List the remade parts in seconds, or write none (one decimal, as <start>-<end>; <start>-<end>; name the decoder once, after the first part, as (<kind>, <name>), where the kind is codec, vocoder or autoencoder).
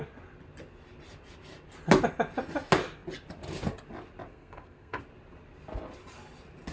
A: 4.3-5.0 (codec, SNAC)